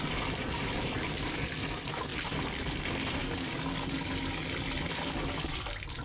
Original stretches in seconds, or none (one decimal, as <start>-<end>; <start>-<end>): 0.0-3.2; 4.1-6.0